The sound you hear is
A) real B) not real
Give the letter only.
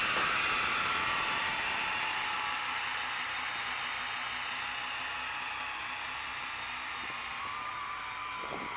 A